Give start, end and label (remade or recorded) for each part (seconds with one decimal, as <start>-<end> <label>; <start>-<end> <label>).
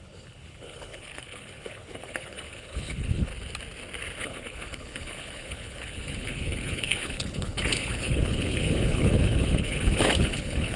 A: 0.0-3.3 remade; 3.3-4.2 recorded; 4.2-10.8 remade